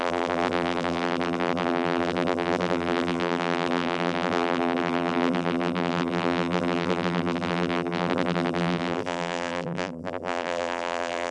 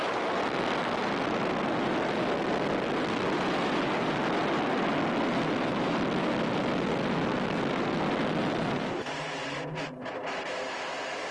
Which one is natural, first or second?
second